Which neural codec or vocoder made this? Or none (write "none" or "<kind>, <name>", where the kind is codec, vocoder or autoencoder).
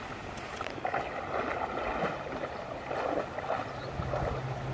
none